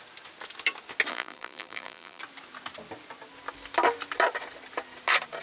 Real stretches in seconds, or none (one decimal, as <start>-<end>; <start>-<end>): 0.0-1.1; 2.2-5.4